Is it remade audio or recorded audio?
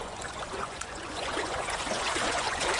remade